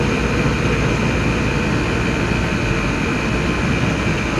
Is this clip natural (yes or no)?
yes